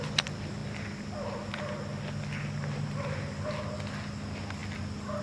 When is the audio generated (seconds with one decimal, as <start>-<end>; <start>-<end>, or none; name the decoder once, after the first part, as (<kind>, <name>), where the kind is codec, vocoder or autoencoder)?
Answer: none